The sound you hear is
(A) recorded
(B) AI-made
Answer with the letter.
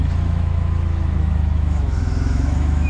B